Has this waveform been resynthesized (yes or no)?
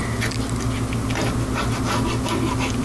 no